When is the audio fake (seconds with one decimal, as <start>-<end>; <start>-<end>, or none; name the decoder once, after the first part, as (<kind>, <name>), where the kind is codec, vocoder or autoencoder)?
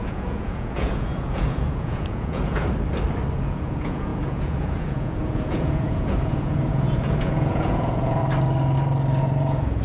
0.0-2.6 (vocoder, Vocos); 3.4-8.2; 9.2-9.8